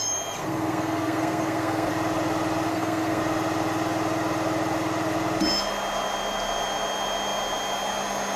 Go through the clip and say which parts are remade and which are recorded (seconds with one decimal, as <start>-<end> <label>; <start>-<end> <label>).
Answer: 0.0-0.4 recorded; 0.4-1.9 remade; 1.9-2.7 recorded; 2.7-3.2 remade; 3.2-8.4 recorded